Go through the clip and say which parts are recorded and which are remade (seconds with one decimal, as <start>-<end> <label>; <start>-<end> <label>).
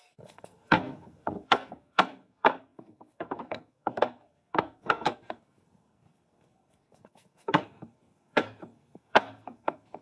0.0-10.0 remade